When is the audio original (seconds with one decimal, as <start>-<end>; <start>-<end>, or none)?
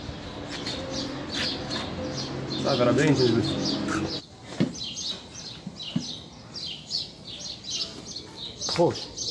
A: 0.0-9.3